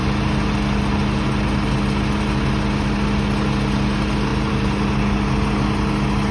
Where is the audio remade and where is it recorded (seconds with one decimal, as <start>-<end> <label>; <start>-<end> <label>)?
0.0-4.3 recorded; 4.3-4.9 remade; 4.9-6.3 recorded